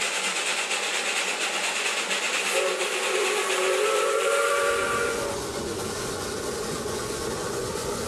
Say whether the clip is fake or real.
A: fake